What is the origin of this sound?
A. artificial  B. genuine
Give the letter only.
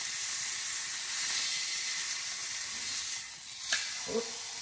B